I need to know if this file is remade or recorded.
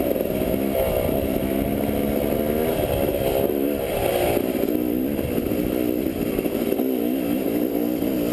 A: recorded